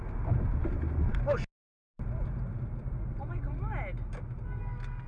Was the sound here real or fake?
real